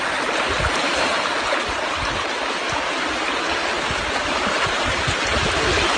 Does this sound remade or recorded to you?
recorded